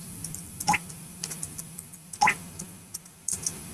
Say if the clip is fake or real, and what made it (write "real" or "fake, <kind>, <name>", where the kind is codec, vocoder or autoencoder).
real